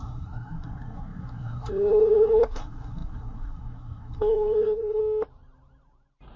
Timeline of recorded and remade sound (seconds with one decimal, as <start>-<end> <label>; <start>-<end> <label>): 0.0-5.0 remade; 5.0-6.4 recorded